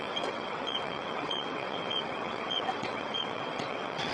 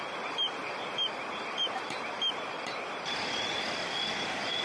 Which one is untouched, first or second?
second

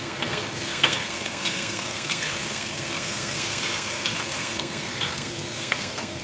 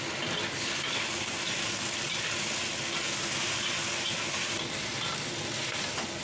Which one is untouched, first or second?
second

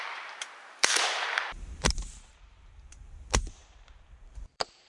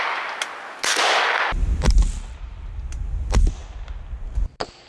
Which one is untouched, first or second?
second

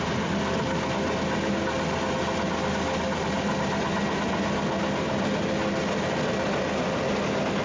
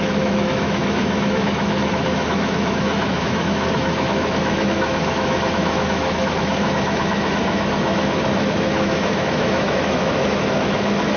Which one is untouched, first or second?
first